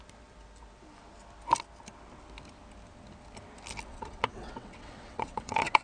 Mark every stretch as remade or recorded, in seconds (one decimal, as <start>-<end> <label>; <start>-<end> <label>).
0.0-3.9 recorded; 3.9-5.8 remade